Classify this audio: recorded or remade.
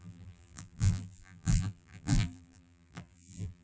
remade